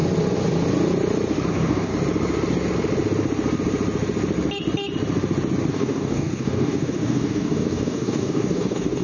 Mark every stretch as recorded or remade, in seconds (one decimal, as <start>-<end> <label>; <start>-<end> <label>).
0.0-1.5 recorded; 1.5-1.9 remade; 1.9-5.7 recorded; 5.7-9.0 remade